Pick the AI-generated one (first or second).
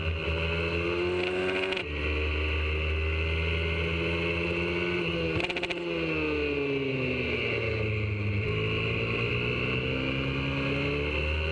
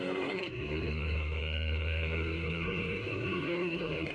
second